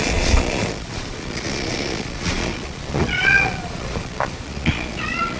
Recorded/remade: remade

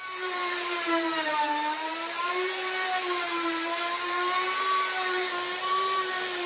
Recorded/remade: remade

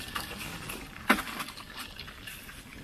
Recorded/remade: recorded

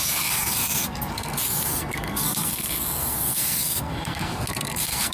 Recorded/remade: remade